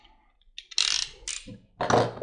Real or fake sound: real